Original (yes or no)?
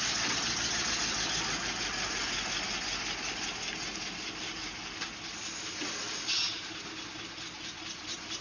yes